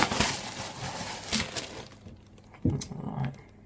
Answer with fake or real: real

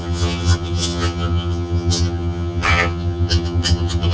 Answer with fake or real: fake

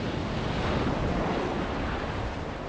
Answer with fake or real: real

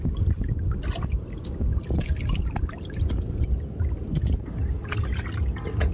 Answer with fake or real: real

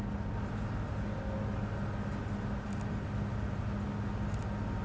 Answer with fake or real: real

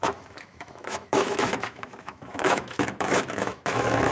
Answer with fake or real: fake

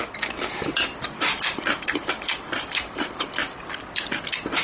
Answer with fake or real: fake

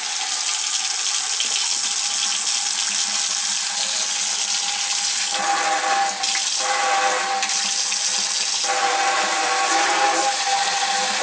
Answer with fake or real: real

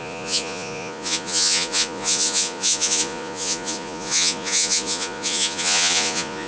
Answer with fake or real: fake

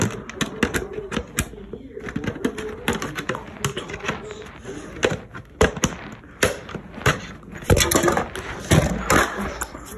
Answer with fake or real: real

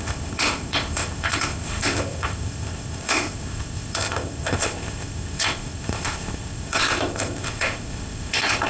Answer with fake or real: fake